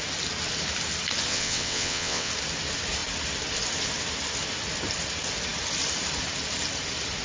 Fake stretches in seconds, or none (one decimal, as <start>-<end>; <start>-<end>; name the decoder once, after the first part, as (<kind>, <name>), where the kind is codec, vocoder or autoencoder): 1.3-2.3 (vocoder, WaveNeXt)